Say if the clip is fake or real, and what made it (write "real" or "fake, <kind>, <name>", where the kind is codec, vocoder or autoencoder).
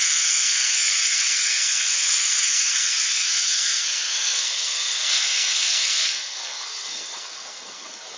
fake, codec, SNAC